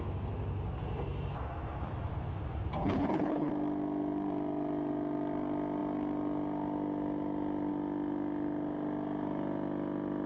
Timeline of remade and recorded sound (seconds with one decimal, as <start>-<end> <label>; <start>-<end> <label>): 0.0-2.8 recorded; 2.8-3.5 remade; 3.5-10.3 recorded